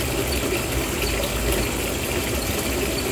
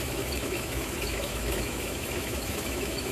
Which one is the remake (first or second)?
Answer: second